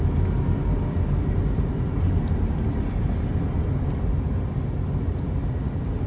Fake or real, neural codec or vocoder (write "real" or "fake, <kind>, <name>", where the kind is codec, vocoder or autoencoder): real